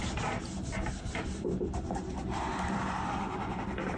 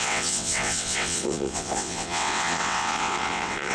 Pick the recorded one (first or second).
first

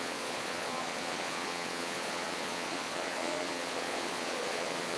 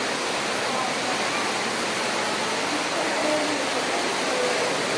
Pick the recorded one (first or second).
second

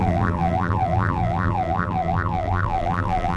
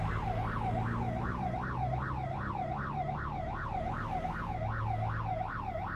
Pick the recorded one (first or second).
second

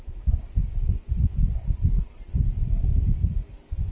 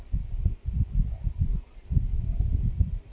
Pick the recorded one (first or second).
second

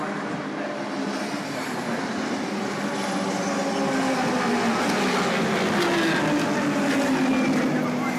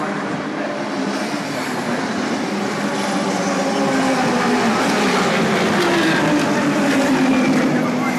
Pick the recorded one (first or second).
first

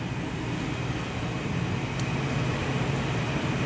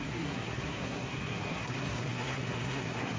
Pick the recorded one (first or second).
first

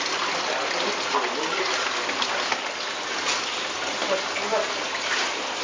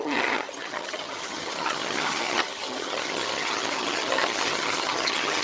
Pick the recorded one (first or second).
first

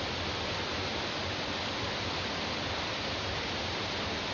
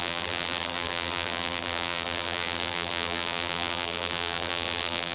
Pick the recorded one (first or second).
first